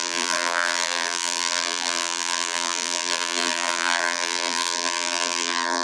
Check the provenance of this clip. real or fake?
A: fake